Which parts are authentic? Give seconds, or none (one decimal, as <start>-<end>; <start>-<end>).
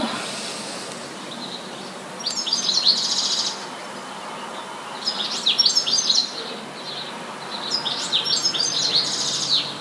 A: 0.0-1.0; 1.8-9.8